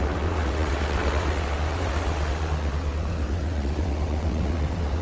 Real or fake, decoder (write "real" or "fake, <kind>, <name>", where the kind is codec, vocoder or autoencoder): fake, vocoder, WaveNeXt